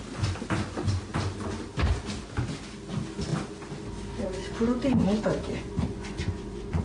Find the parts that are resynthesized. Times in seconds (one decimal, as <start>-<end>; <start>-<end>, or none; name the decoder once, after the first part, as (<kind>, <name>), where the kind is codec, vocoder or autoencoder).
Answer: 4.4-6.8 (vocoder, Vocos)